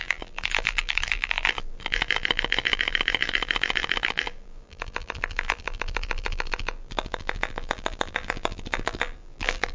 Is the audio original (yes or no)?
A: no